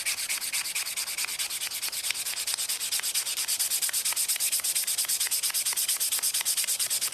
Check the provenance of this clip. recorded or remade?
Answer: recorded